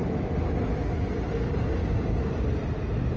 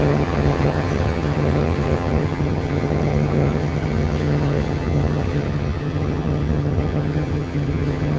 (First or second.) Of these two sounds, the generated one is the second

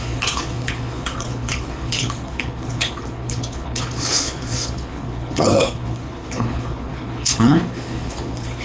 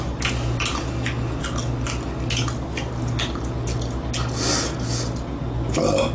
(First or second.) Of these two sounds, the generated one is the first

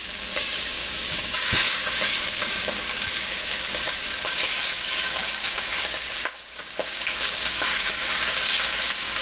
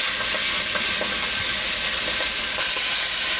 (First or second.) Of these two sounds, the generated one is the first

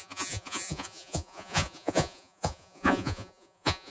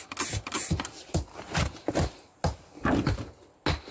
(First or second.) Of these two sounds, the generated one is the first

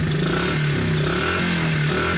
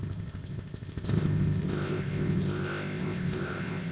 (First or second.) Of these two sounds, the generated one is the second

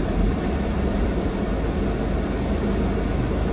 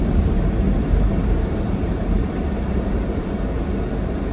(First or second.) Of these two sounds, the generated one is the second